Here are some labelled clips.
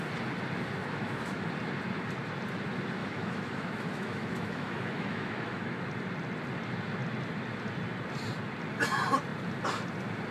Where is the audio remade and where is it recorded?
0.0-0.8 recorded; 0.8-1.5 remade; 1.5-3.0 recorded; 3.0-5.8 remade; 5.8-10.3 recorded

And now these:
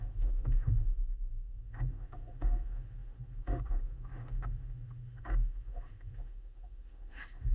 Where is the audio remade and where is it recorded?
0.0-7.5 remade

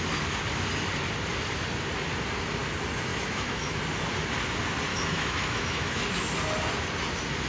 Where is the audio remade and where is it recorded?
0.0-3.1 recorded; 3.1-3.8 remade; 3.8-4.9 recorded; 4.9-6.0 remade; 6.0-7.5 recorded

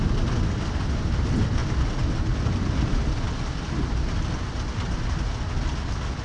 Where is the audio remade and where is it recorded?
0.0-6.2 recorded

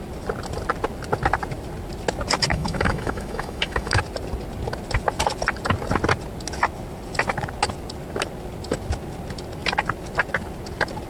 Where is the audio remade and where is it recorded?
0.0-2.5 recorded; 2.5-4.0 remade; 4.0-11.1 recorded

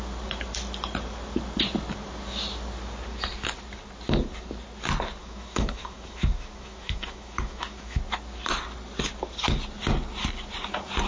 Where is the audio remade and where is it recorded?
0.0-5.2 recorded; 5.2-8.0 remade; 8.0-11.1 recorded